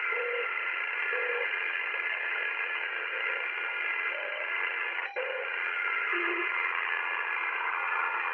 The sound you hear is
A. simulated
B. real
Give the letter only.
A